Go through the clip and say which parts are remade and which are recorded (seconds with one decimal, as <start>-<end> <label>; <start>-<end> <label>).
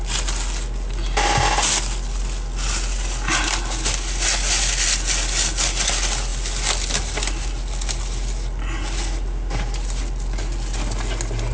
0.0-11.5 recorded